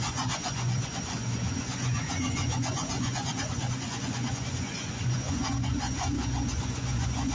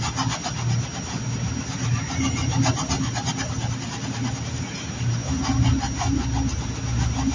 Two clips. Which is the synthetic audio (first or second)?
first